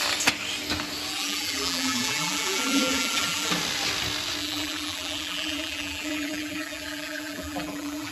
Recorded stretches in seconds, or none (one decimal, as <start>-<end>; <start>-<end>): 0.0-1.1; 3.5-4.4